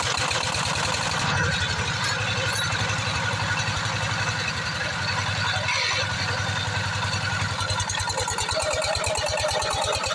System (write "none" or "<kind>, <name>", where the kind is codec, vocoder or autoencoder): vocoder, BigVGAN v2